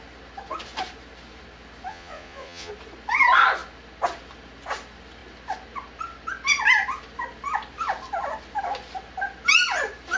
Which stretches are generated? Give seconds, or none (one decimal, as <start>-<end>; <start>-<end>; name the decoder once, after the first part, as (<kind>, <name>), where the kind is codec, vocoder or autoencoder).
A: 1.9-2.7 (vocoder, Vocos)